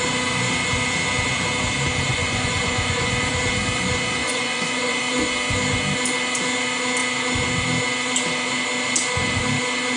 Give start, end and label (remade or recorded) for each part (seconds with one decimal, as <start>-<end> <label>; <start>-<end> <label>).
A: 0.0-2.1 recorded; 2.1-3.2 remade; 3.2-4.2 recorded; 4.2-5.0 remade; 5.0-10.0 recorded